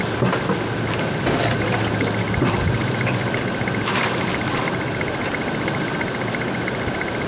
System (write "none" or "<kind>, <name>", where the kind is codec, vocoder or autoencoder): none